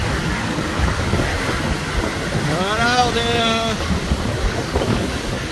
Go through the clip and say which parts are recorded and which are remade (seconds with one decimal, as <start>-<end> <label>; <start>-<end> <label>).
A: 0.0-1.3 remade; 1.3-3.4 recorded; 3.4-5.5 remade